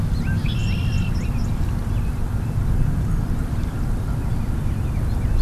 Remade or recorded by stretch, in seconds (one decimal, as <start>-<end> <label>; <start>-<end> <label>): 0.0-5.4 recorded